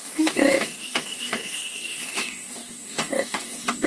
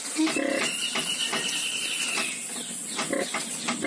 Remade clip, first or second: first